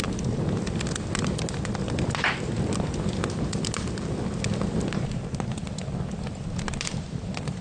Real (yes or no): yes